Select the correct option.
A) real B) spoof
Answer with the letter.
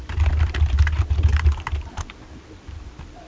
A